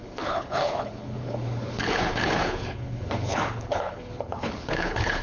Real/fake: fake